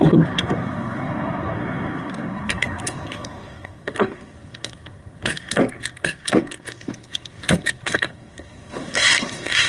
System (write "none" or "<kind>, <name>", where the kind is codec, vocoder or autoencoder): codec, SNAC